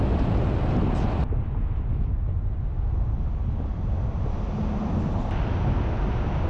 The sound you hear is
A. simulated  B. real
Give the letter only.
B